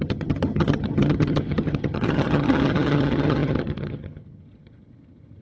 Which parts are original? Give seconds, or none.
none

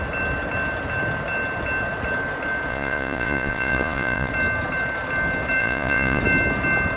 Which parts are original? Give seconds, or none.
0.0-2.7; 4.3-5.6; 6.2-7.0

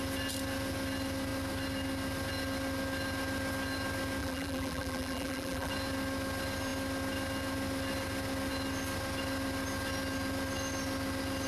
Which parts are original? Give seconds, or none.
0.0-4.2; 5.7-11.5

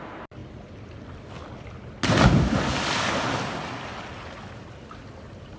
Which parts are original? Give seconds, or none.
0.0-5.6

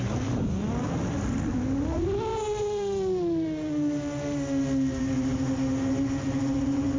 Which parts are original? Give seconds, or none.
0.0-7.0

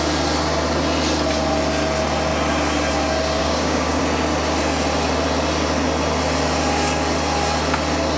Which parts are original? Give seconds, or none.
0.0-3.4; 4.0-8.2

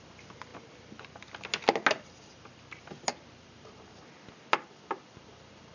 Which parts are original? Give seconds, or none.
0.0-5.7

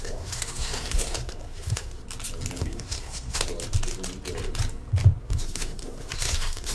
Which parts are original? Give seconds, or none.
2.0-2.6; 3.5-5.2